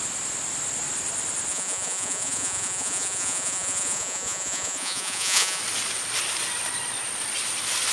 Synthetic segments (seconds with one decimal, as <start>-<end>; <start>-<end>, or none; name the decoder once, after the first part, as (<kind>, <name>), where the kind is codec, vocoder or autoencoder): 1.5-5.6 (vocoder, Vocos)